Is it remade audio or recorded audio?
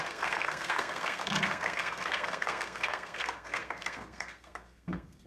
remade